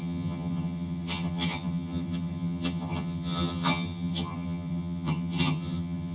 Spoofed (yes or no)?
yes